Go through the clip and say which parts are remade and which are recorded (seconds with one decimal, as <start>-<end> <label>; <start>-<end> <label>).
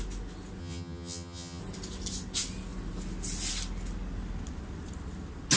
0.0-0.6 recorded; 0.6-1.6 remade; 1.6-5.6 recorded